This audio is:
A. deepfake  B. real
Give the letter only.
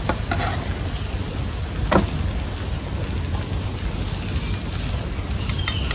B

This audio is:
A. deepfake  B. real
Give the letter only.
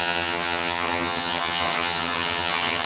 A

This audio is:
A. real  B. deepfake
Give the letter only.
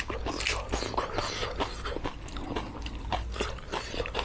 A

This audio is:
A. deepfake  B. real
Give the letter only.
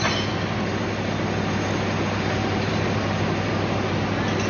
B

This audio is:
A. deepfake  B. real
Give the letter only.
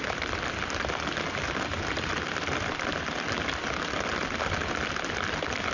B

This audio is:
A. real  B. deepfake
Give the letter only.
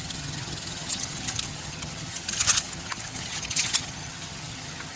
B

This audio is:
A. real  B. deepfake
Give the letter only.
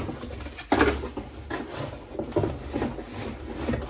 A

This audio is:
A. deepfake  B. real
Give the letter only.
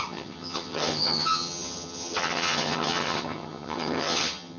A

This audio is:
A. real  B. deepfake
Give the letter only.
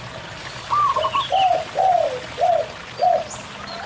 A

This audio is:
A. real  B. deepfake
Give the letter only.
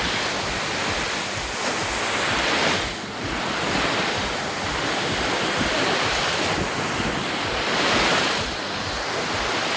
A